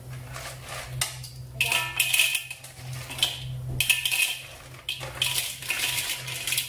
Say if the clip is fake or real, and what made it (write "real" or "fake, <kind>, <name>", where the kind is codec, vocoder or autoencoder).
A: real